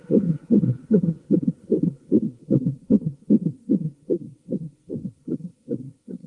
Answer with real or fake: fake